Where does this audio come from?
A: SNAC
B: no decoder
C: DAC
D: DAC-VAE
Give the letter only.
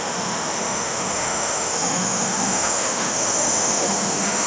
D